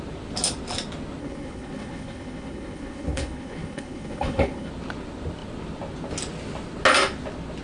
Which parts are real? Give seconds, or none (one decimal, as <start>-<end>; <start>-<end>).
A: 0.0-1.2; 4.7-7.6

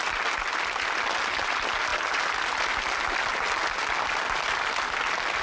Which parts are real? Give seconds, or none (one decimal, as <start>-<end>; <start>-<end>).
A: 0.0-5.4